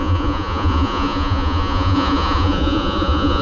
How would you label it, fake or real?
fake